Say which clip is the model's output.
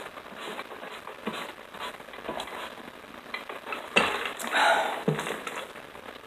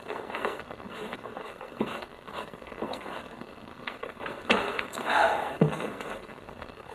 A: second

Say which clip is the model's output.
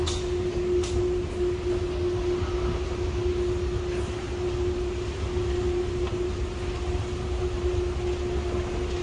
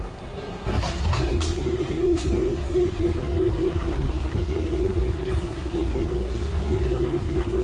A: second